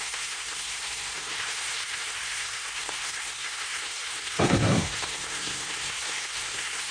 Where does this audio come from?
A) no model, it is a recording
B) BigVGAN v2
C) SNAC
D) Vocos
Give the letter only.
C